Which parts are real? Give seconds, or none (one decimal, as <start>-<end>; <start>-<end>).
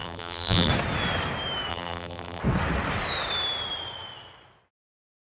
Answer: 0.7-1.7; 2.4-5.4